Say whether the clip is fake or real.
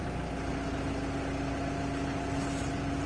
real